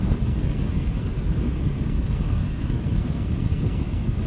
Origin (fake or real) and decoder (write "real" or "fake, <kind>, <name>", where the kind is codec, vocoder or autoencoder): fake, codec, SNAC